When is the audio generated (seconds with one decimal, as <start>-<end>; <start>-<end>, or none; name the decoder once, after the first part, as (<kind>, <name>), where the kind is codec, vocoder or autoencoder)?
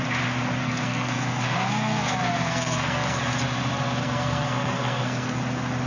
0.6-3.2 (codec, SNAC); 4.0-5.4